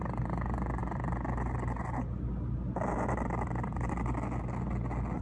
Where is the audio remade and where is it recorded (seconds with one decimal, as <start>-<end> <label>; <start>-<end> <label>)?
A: 0.0-5.2 recorded